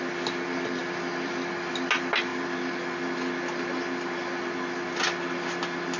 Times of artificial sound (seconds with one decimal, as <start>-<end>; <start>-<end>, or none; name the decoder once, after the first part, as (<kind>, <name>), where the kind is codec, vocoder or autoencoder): none